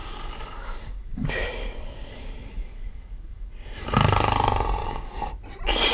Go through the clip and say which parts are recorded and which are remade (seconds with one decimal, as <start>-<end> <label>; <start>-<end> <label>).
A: 0.0-3.5 remade; 3.5-4.8 recorded; 4.8-5.3 remade; 5.3-5.9 recorded